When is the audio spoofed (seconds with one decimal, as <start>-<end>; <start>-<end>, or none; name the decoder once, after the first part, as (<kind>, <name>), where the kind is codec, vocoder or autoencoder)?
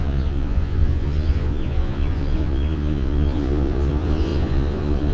0.0-5.1 (vocoder, Vocos)